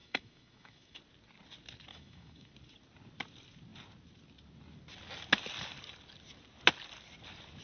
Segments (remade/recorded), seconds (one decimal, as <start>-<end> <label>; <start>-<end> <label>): 0.0-1.0 remade; 1.0-1.9 recorded; 1.9-2.5 remade; 2.5-7.6 recorded